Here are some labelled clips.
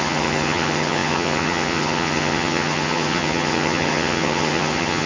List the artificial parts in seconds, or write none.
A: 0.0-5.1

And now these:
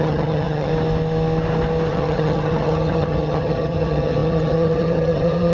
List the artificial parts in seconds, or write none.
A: 0.0-0.7; 1.9-5.5

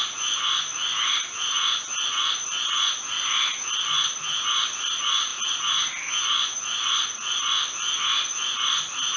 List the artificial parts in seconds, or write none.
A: none

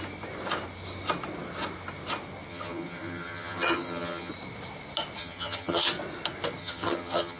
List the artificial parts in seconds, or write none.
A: 2.5-4.3; 5.2-5.9; 6.6-7.4

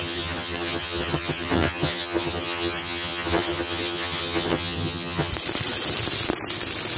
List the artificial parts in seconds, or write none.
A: 0.0-5.3

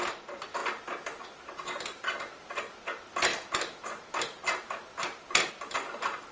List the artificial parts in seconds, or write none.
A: none

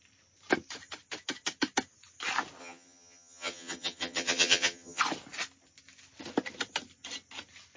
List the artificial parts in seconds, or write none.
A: 2.6-5.0